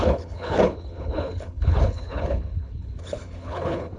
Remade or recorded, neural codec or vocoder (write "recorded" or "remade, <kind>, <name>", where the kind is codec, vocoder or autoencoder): remade, codec, HILCodec